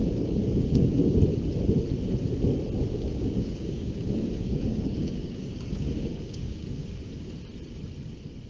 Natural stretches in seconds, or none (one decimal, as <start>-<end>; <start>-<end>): 1.1-2.9; 6.9-8.5